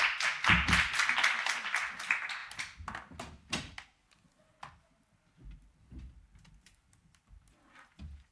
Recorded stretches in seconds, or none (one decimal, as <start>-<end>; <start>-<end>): 0.0-8.3